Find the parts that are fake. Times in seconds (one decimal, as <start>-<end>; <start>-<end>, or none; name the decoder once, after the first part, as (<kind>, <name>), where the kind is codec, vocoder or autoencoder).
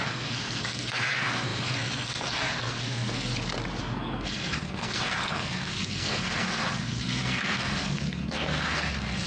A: 0.0-3.3 (codec, SNAC); 3.8-9.3